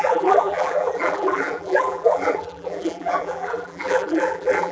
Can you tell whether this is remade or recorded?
remade